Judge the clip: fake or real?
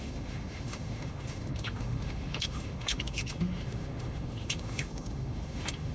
fake